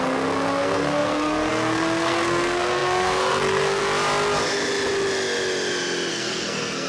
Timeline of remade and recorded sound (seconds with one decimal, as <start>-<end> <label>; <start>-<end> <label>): 0.0-3.8 remade; 3.8-6.1 recorded; 6.1-6.9 remade